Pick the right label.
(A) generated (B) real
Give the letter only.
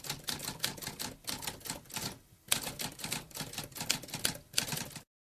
B